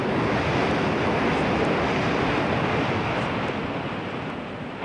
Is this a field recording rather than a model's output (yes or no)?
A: yes